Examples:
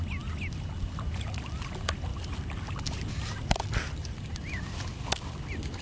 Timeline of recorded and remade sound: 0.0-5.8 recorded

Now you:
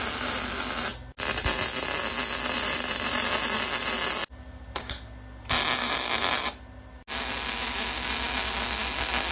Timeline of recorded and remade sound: 0.0-9.3 recorded

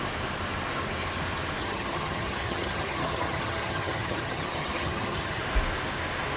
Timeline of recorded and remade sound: 0.0-1.6 recorded; 1.6-5.4 remade; 5.4-6.4 recorded

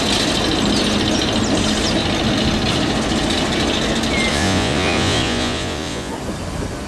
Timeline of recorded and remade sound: 0.0-4.3 recorded; 4.3-6.1 remade; 6.1-6.9 recorded

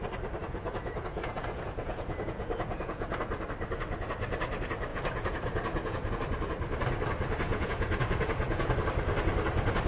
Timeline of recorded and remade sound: 0.0-0.4 recorded; 0.4-3.2 remade; 3.2-4.9 recorded; 4.9-6.1 remade; 6.1-7.5 recorded; 7.5-8.7 remade; 8.7-9.9 recorded

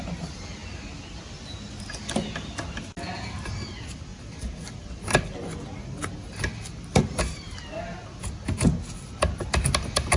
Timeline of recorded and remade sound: 0.0-10.2 recorded